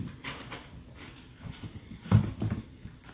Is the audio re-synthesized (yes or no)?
no